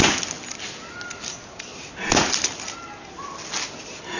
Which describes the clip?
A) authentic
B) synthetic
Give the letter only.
A